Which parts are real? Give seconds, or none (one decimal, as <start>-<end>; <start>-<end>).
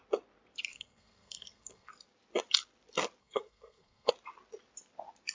0.0-0.7; 1.9-3.2; 4.1-5.3